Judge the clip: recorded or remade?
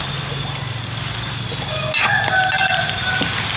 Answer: recorded